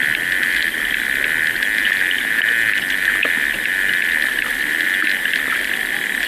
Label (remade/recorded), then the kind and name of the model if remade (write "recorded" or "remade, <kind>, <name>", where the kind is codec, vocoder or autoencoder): recorded